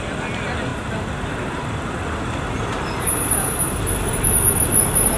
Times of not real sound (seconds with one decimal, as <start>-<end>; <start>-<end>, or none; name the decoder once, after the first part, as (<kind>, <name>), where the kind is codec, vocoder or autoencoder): 0.7-3.8 (vocoder, BigVGAN v2)